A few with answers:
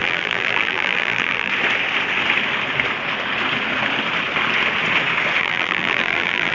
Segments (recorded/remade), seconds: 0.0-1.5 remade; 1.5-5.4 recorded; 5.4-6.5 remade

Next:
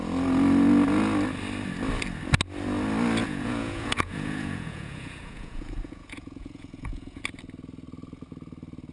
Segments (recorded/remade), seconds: 0.0-3.2 recorded; 3.2-7.2 remade; 7.2-8.9 recorded

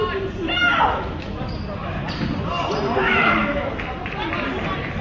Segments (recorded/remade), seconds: 0.0-0.6 recorded; 0.6-1.4 remade; 1.4-3.0 recorded; 3.0-3.7 remade; 3.7-5.0 recorded

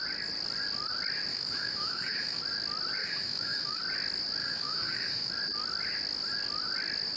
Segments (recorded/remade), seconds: 0.0-1.3 recorded; 1.3-2.4 remade; 2.4-3.0 recorded; 3.0-3.8 remade; 3.8-4.4 recorded; 4.4-5.3 remade; 5.3-7.2 recorded

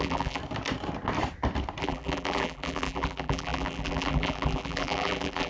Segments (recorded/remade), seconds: 0.0-0.4 remade; 0.4-1.8 recorded; 1.8-5.5 remade

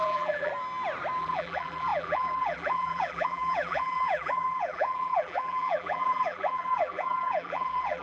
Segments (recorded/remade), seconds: 0.0-0.5 remade; 0.5-1.2 recorded; 1.2-8.0 remade

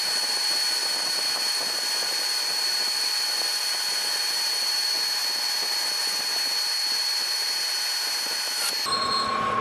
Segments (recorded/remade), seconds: 0.0-9.6 recorded

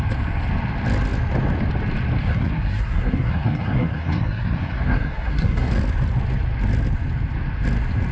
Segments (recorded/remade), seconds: 0.0-2.2 recorded; 2.2-5.7 remade; 5.7-8.1 recorded